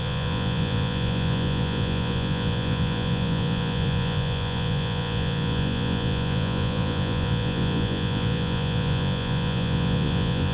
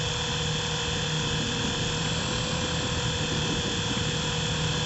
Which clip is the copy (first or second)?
first